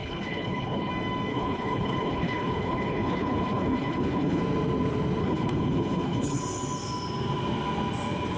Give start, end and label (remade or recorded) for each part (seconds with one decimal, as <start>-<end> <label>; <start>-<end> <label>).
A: 0.0-0.9 remade; 0.9-1.3 recorded; 1.3-4.4 remade; 4.4-5.2 recorded; 5.2-6.4 remade; 6.4-8.4 recorded